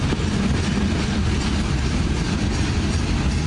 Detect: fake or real real